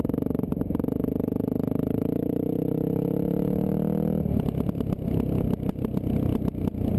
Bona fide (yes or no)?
yes